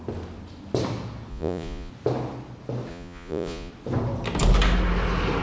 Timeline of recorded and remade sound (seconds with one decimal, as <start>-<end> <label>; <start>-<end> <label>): 0.0-1.3 recorded; 1.3-1.9 remade; 1.9-2.9 recorded; 2.9-3.7 remade; 3.7-5.4 recorded